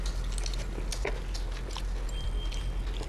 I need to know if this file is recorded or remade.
recorded